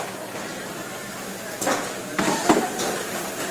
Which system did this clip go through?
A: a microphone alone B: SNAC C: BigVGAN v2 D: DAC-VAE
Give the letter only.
A